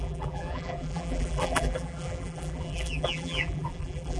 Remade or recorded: remade